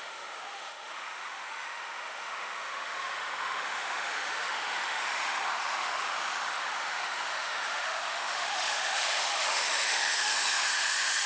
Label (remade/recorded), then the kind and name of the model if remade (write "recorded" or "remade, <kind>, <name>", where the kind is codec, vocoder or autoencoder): remade, autoencoder, DAC-VAE